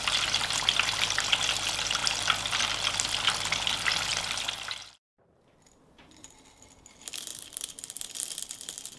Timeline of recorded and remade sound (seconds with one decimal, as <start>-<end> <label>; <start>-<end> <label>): 0.0-2.0 recorded; 2.0-2.6 remade; 2.6-4.1 recorded; 4.1-4.7 remade; 4.7-7.3 recorded; 7.3-8.4 remade; 8.4-9.0 recorded

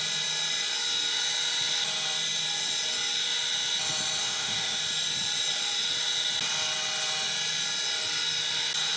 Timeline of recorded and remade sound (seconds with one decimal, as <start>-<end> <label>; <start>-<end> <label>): 0.0-4.2 recorded; 4.2-4.8 remade; 4.8-9.0 recorded

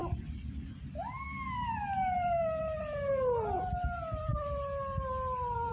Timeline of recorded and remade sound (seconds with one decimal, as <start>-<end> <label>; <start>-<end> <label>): 0.0-5.7 recorded